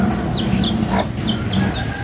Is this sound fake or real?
real